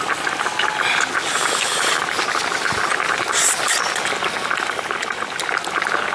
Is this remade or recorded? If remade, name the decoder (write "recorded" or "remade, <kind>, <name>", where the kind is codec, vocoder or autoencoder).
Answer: recorded